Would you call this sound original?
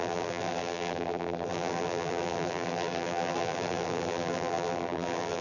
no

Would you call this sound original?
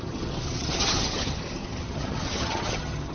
no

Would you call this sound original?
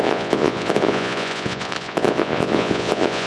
no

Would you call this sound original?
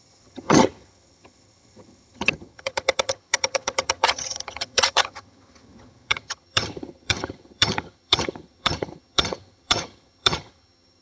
no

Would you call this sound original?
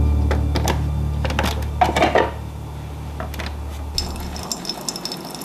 yes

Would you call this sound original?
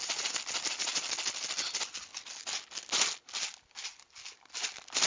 yes